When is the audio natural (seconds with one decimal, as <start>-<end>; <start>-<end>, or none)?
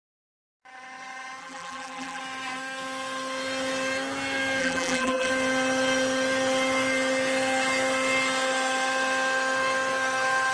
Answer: 0.0-1.4; 2.2-4.6; 5.3-10.5